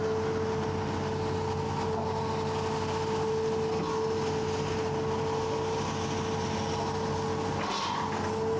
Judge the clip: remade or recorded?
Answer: recorded